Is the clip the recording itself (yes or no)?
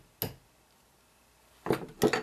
yes